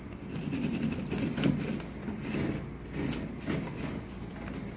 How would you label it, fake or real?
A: real